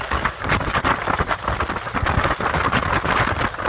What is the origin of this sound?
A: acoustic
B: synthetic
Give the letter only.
A